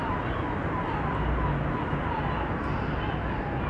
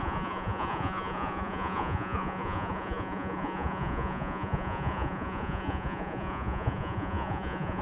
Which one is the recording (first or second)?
first